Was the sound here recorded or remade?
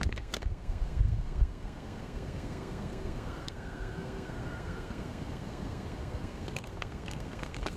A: remade